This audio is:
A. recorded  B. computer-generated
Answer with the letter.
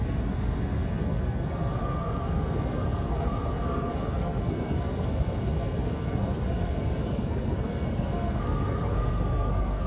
B